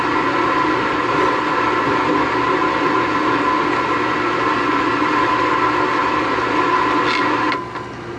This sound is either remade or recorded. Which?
recorded